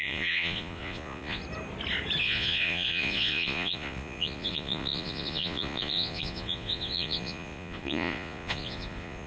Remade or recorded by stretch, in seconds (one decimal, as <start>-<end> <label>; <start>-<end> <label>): 0.0-1.4 remade; 1.4-2.2 recorded; 2.2-9.3 remade

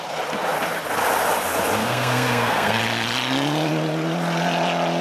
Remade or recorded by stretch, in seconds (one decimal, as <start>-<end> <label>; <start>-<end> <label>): 0.0-1.8 recorded; 1.8-2.8 remade; 2.8-5.0 recorded

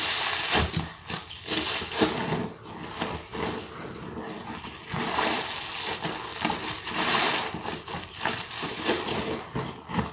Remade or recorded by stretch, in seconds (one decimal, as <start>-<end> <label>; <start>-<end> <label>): 0.0-10.1 recorded

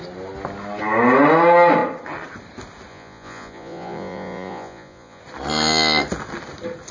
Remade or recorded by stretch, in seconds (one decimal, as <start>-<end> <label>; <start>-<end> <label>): 0.0-2.9 recorded; 2.9-5.2 remade; 5.2-6.9 recorded

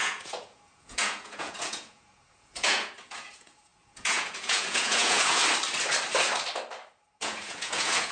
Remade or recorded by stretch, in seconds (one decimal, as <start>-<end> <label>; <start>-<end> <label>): 0.0-5.4 remade; 5.4-7.2 recorded; 7.2-8.1 remade

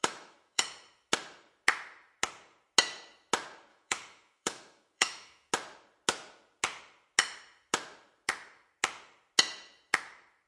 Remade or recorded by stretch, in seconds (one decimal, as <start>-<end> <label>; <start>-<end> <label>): 0.0-0.6 remade; 0.6-3.7 recorded; 3.7-5.5 remade; 5.5-10.5 recorded

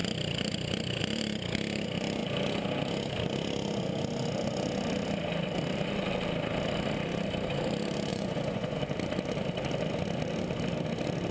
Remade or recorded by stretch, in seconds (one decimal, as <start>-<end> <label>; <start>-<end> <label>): 0.0-8.1 recorded; 8.1-8.8 remade; 8.8-11.3 recorded

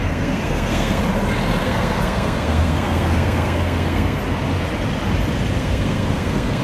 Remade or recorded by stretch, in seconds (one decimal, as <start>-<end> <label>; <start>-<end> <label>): 0.0-1.0 remade; 1.0-1.6 recorded; 1.6-4.2 remade; 4.2-5.6 recorded; 5.6-6.6 remade